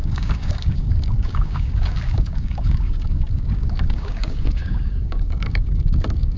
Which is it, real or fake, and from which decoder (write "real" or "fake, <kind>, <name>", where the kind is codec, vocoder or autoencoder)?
fake, codec, DAC